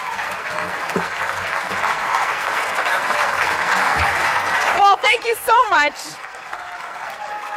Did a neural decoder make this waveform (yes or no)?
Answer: yes